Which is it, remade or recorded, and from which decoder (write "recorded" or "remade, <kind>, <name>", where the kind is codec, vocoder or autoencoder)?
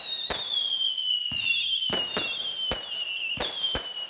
recorded